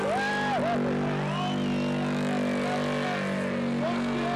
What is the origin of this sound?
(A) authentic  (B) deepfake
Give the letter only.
A